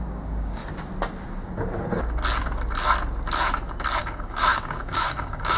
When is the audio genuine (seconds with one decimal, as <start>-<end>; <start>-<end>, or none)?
0.6-4.0